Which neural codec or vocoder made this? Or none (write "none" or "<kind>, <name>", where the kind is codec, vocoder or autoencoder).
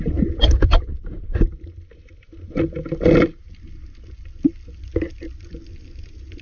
none